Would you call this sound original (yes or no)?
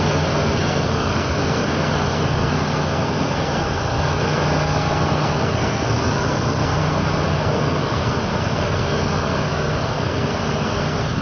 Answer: no